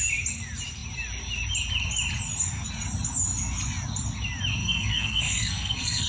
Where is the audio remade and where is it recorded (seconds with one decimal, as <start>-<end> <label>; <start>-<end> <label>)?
0.0-4.6 recorded; 4.6-6.1 remade